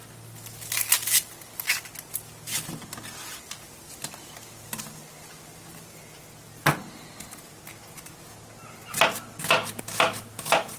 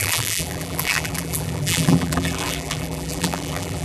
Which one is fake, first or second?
second